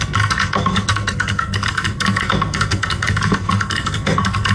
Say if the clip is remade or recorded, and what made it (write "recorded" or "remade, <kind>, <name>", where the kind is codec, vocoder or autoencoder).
remade, codec, SNAC